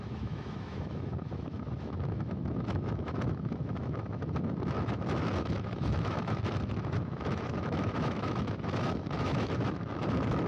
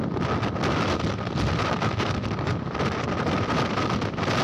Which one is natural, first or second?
second